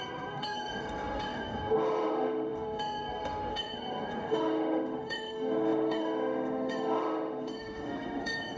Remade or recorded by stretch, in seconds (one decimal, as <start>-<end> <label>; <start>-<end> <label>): 0.0-8.6 remade